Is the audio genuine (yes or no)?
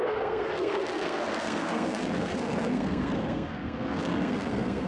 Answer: no